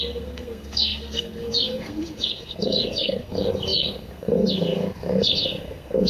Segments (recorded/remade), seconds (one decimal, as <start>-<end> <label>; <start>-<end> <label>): 0.0-6.1 remade